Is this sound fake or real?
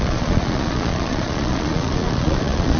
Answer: fake